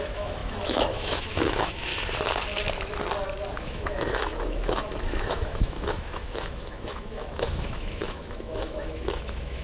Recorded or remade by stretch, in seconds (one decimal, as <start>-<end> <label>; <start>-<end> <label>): 0.0-1.9 remade; 1.9-3.6 recorded; 3.6-9.6 remade